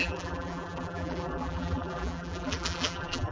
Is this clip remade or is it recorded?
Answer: remade